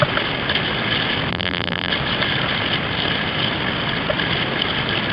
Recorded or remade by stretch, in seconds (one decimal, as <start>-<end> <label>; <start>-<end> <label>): 0.0-1.3 recorded; 1.3-1.9 remade; 1.9-5.1 recorded